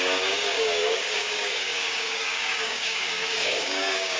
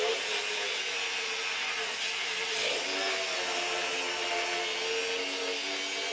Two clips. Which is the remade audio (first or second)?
first